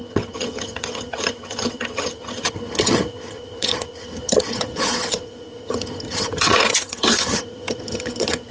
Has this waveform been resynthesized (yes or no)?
yes